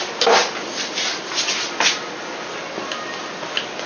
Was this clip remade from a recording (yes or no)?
no